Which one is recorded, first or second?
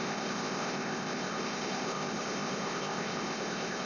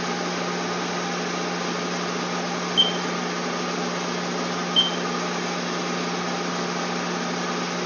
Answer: second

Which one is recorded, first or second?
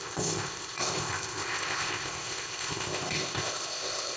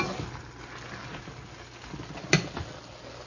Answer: second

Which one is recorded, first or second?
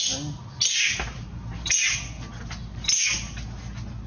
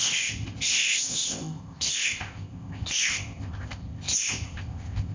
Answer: first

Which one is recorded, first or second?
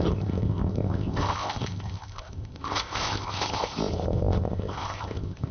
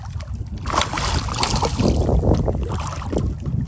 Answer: second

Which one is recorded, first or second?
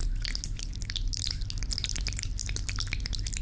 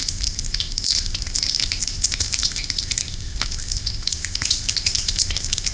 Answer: first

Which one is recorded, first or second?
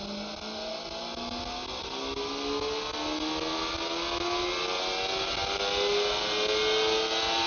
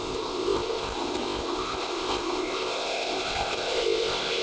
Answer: first